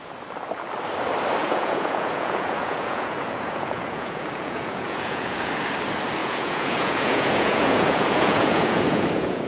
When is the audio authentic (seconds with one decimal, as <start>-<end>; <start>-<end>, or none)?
0.0-1.4; 5.5-6.2